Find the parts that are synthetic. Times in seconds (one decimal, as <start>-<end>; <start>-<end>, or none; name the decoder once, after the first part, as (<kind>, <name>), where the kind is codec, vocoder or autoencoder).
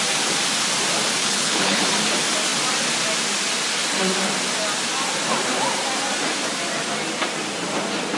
1.2-1.8 (codec, HILCodec)